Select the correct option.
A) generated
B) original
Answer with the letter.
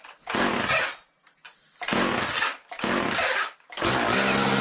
B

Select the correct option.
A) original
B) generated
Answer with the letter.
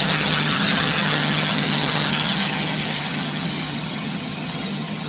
B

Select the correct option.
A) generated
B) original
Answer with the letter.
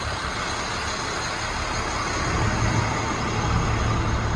B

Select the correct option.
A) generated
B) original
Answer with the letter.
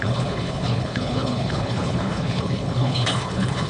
A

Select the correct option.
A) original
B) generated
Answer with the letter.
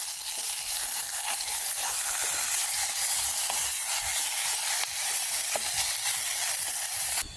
A